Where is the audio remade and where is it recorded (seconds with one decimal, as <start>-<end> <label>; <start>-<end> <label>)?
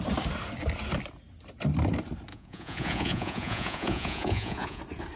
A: 0.0-2.3 recorded; 2.3-4.8 remade; 4.8-5.2 recorded